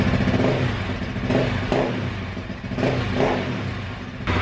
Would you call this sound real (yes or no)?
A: yes